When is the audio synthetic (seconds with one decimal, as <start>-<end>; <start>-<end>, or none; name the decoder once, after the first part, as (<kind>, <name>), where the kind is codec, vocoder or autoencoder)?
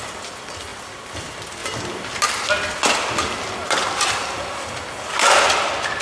none